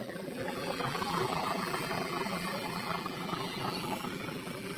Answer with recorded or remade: remade